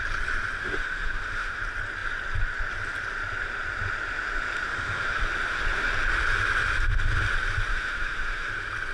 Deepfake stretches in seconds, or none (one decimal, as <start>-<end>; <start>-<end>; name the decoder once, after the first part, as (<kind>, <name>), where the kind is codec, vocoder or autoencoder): 0.6-1.6 (autoencoder, DAC-VAE); 4.7-5.2; 7.7-8.5